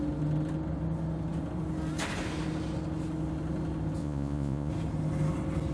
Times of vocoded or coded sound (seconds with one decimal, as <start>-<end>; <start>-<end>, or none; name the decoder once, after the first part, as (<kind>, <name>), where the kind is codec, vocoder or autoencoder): 4.0-4.7 (vocoder, Vocos)